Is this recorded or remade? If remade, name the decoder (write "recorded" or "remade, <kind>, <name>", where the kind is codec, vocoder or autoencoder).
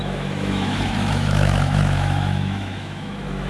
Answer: remade, autoencoder, DAC-VAE